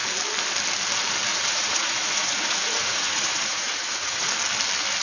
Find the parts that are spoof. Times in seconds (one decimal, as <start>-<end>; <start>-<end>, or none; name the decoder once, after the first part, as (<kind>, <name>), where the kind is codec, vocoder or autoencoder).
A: 1.3-4.3 (vocoder, Vocos)